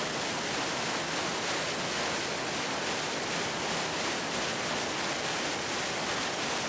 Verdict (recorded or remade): recorded